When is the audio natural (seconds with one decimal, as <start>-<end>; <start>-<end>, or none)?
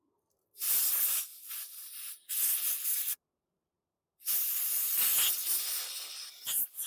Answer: 0.0-6.9